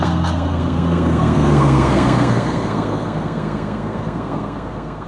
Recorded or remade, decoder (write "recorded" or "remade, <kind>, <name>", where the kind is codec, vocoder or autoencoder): remade, codec, SNAC